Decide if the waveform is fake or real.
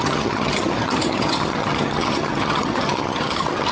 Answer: fake